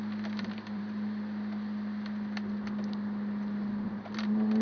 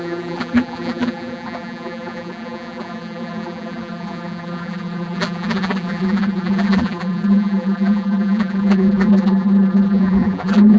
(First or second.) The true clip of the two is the first